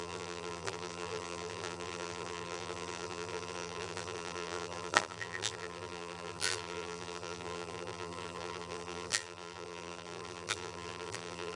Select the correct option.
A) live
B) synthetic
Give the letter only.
B